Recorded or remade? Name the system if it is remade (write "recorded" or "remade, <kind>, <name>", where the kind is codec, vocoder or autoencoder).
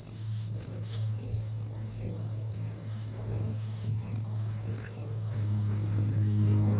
remade, codec, DAC